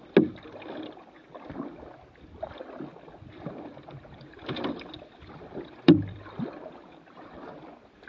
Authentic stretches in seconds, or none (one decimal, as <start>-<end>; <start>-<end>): 0.0-2.9